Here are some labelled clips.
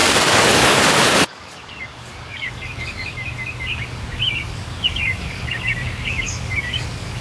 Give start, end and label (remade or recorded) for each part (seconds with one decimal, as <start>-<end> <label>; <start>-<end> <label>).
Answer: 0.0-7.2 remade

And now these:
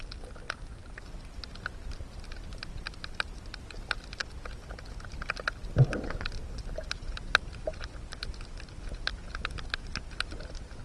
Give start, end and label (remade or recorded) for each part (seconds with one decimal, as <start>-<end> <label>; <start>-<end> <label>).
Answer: 0.0-10.8 recorded

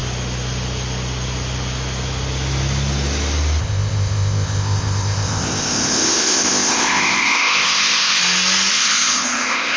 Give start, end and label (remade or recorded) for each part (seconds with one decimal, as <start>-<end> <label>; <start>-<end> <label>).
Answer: 0.0-3.6 recorded; 3.6-8.2 remade; 8.2-8.7 recorded; 8.7-9.8 remade